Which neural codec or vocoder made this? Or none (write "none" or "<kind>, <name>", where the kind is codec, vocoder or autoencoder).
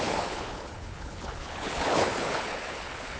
codec, HILCodec